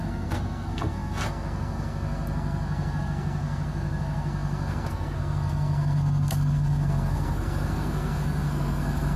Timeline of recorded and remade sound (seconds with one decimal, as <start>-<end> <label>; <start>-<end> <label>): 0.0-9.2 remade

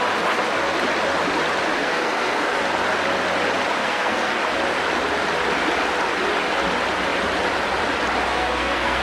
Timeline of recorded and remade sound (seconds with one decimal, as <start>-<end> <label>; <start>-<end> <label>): 0.0-1.8 recorded; 1.8-2.6 remade; 2.6-3.8 recorded; 3.8-4.4 remade; 4.4-8.3 recorded; 8.3-9.0 remade

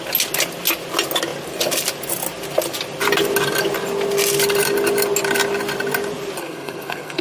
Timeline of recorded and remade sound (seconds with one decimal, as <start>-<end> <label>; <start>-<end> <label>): 0.0-6.4 recorded; 6.4-7.2 remade

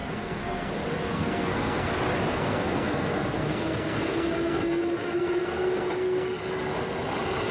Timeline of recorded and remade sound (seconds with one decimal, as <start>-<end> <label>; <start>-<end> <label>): 0.0-0.7 remade; 0.7-1.1 recorded; 1.1-1.9 remade; 1.9-2.3 recorded; 2.3-6.4 remade; 6.4-7.5 recorded

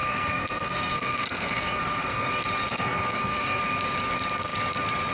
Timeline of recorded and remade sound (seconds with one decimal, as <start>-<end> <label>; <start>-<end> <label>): 0.0-2.3 remade; 2.3-2.7 recorded; 2.7-3.6 remade; 3.6-5.1 recorded

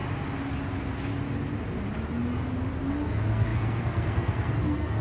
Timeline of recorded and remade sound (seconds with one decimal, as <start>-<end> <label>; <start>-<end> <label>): 0.0-2.9 recorded; 2.9-5.0 remade

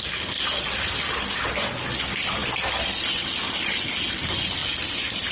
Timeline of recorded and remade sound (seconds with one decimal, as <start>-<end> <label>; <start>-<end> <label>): 0.0-5.3 recorded